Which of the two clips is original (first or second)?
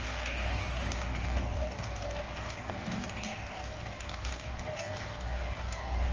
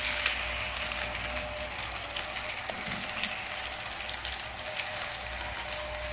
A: second